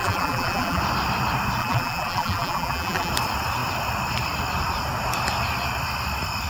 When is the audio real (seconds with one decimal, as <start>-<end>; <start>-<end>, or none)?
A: 0.8-1.6; 3.1-6.5